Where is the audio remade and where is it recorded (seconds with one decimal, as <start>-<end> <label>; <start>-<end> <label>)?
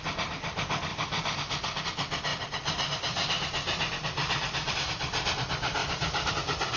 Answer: 0.0-6.8 recorded